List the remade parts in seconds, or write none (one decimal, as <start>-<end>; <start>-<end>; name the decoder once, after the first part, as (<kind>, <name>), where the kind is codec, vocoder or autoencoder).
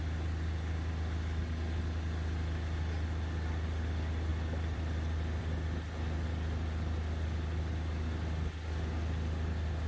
4.3-5.5 (vocoder, BigVGAN v2)